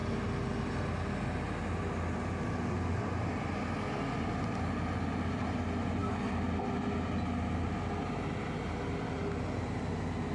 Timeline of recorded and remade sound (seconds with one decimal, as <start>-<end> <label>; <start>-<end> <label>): 0.0-10.3 recorded